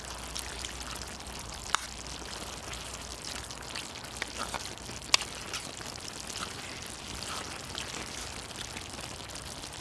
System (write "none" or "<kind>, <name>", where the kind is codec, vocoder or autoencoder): none